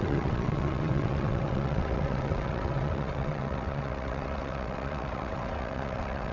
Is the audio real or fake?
fake